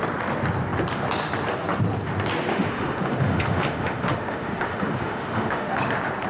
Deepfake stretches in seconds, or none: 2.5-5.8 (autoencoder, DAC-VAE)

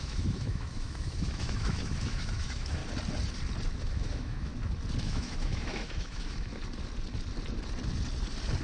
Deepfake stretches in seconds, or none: 0.0-2.8 (autoencoder, DAC-VAE); 3.8-4.5; 5.0-6.5

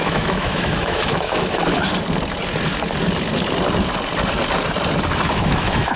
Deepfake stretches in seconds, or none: 0.0-1.6 (autoencoder, DAC-VAE); 5.2-6.0

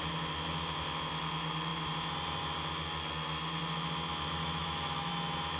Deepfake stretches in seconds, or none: 4.4-5.1 (autoencoder, DAC-VAE)

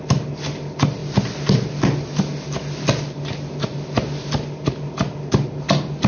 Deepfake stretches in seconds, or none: none

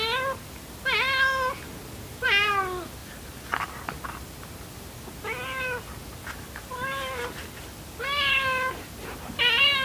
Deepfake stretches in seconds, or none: none